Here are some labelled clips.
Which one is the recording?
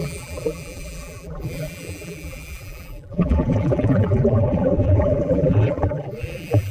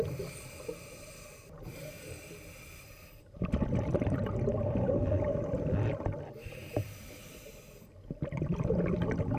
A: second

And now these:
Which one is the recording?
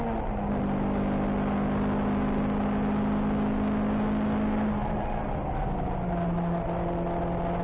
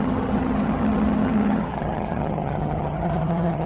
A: first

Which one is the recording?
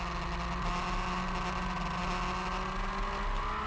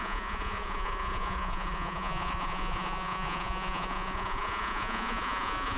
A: first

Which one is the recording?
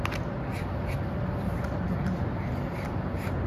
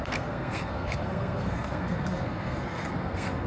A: first